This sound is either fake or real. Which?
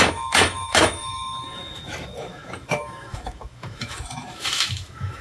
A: fake